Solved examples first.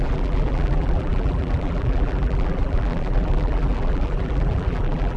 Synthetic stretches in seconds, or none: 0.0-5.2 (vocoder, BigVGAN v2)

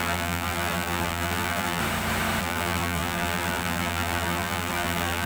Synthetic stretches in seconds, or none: 0.0-1.8 (vocoder, BigVGAN v2); 2.4-5.3

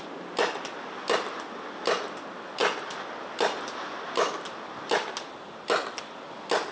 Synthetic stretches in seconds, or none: none

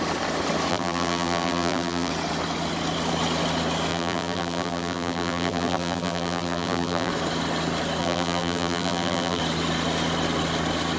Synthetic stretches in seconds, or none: 0.7-2.1 (vocoder, BigVGAN v2); 3.9-7.1; 8.0-9.4

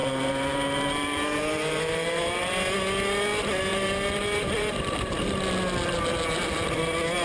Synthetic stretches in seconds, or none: 0.0-2.5 (vocoder, BigVGAN v2); 3.7-5.0

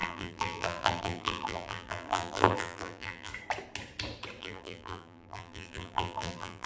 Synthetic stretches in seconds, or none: 0.0-3.3 (vocoder, BigVGAN v2); 4.4-6.7

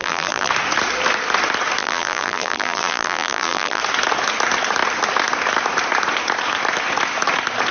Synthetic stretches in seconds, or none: 0.0-0.5 (vocoder, BigVGAN v2); 1.8-3.8

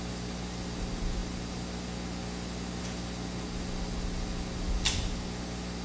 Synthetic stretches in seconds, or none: none